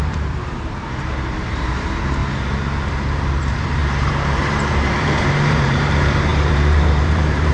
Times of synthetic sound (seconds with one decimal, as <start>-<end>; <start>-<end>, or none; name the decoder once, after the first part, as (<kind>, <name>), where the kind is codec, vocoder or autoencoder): 0.0-2.2 (vocoder, BigVGAN v2); 3.4-7.5